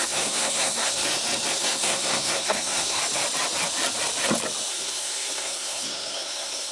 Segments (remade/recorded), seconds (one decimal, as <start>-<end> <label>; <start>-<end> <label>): 0.0-1.0 remade; 1.0-1.5 recorded; 1.5-3.0 remade; 3.0-4.7 recorded; 4.7-6.7 remade